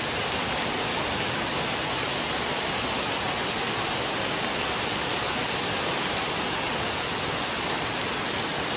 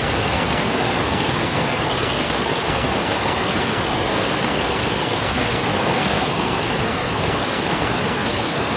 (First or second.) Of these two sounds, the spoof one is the second